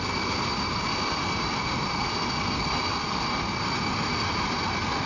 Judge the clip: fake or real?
real